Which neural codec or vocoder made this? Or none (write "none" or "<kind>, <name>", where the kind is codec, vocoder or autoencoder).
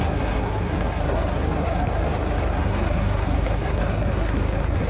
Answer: codec, SNAC